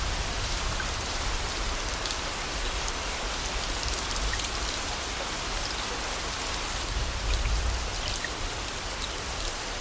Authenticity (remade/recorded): recorded